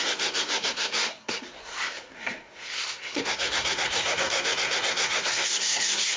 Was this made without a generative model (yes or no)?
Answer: no